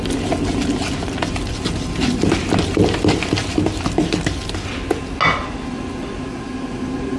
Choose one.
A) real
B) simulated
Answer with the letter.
A